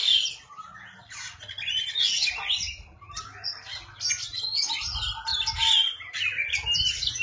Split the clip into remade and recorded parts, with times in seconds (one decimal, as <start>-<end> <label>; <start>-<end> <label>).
0.0-7.2 recorded